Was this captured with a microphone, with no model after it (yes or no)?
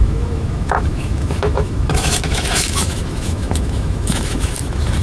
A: no